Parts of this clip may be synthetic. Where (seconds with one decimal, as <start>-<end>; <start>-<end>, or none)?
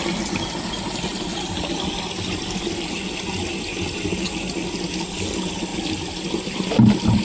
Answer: none